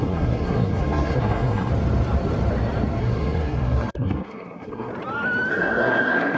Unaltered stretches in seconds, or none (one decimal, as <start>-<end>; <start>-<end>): 1.7-3.0; 4.9-5.5